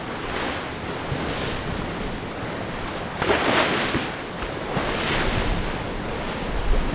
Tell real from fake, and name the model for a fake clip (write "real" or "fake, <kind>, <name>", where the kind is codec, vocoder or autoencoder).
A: real